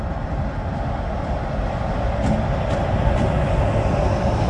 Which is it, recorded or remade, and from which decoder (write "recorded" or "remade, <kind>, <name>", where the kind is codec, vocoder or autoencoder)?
recorded